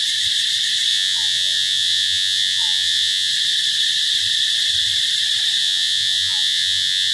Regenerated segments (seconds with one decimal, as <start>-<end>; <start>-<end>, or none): 0.9-3.3; 5.6-7.1